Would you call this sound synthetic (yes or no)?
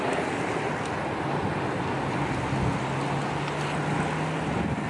no